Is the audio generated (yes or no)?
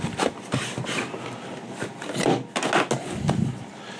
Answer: no